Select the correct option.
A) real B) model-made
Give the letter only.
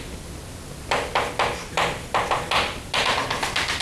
A